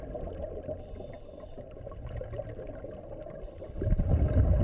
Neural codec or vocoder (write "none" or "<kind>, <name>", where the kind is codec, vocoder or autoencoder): none